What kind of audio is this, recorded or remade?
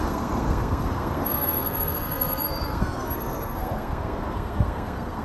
remade